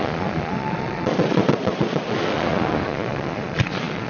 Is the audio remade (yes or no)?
yes